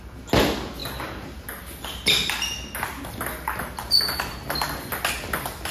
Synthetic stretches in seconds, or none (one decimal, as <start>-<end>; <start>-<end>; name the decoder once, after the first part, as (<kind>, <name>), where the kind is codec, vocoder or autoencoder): none